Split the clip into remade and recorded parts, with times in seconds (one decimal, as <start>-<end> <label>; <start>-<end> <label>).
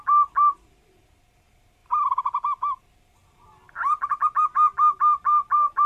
0.0-5.9 recorded